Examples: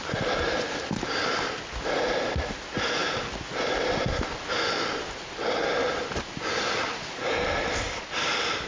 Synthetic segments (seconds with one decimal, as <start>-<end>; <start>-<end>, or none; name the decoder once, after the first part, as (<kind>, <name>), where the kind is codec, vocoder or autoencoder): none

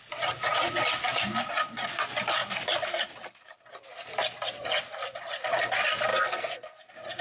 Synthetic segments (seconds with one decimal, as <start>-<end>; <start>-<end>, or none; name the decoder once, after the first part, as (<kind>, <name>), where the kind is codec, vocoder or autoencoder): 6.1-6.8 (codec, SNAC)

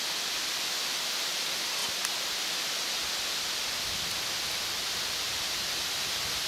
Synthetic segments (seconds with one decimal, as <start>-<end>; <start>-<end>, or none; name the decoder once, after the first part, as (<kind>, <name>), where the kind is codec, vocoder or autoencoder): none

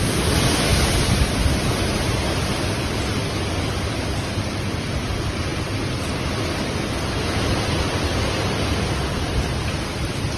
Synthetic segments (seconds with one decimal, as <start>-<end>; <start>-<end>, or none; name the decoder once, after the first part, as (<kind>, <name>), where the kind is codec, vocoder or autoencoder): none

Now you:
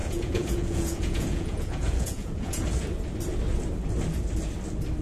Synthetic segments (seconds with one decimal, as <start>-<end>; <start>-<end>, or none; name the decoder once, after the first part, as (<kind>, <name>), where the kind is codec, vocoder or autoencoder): 0.0-2.7 (vocoder, Vocos)

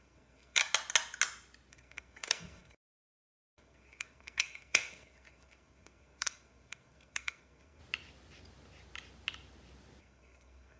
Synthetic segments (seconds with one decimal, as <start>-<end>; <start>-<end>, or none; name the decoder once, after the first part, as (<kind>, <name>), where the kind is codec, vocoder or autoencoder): 0.0-0.6 (codec, SNAC); 1.7-7.8; 10.0-10.8

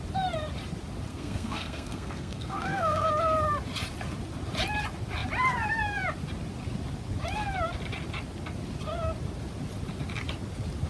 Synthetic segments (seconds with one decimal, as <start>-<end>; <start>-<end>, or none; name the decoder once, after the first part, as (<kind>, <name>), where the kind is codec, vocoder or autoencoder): 1.1-3.1 (codec, SNAC)